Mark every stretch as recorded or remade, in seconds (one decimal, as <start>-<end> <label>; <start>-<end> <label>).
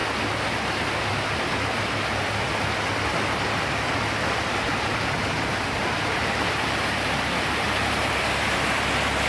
0.0-5.8 recorded; 5.8-8.0 remade; 8.0-9.3 recorded